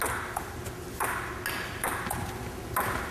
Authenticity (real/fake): real